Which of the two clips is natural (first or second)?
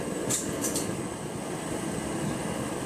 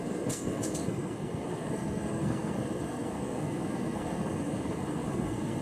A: first